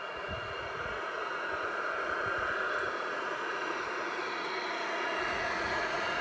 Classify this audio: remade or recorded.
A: remade